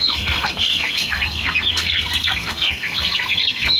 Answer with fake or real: fake